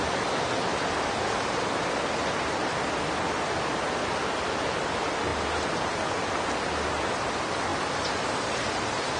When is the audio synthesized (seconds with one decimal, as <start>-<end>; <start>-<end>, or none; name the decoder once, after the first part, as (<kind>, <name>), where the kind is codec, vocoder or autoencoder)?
none

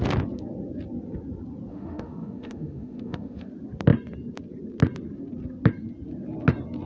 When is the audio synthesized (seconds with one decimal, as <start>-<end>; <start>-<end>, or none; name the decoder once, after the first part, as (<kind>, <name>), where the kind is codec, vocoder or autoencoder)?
1.7-3.5 (autoencoder, DAC-VAE)

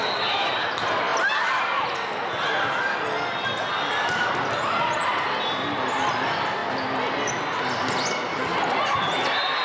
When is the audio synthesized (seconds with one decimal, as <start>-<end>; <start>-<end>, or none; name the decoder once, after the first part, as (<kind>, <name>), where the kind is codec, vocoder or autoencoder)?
none